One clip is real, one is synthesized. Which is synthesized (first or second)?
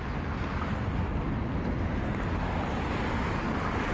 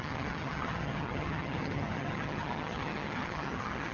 second